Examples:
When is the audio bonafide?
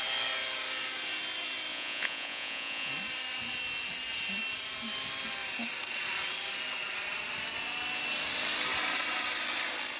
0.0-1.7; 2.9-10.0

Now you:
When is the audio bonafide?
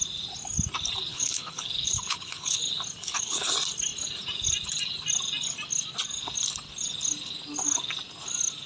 0.0-1.1; 2.6-3.0; 3.5-8.7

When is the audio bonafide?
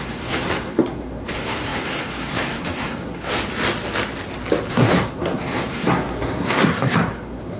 3.3-4.7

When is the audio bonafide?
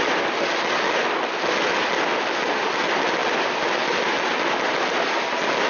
0.0-5.7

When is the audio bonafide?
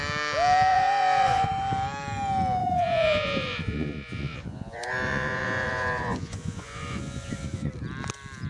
0.0-0.7; 1.5-2.6; 7.7-8.5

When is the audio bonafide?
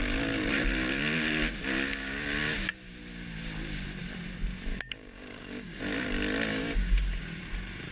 0.0-4.7; 5.8-6.5; 7.1-7.9